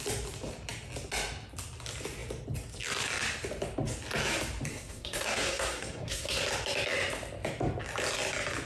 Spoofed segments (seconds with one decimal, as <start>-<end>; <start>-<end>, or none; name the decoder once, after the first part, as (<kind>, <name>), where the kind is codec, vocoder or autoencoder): 4.7-6.4 (codec, SNAC)